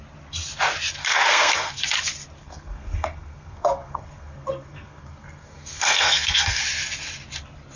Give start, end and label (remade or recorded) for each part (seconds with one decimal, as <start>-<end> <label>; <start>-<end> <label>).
0.0-1.0 recorded; 1.0-1.8 remade; 1.8-2.4 recorded; 2.4-6.6 remade; 6.6-7.8 recorded